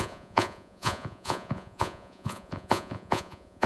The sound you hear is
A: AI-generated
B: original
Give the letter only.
A